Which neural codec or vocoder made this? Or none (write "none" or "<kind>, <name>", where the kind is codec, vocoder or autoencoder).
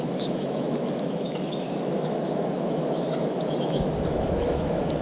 autoencoder, DAC-VAE